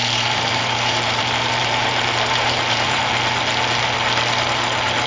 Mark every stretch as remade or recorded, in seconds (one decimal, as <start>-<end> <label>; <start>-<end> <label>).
0.0-3.1 remade; 3.1-5.1 recorded